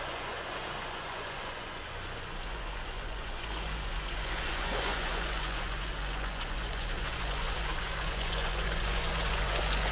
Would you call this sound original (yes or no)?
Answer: no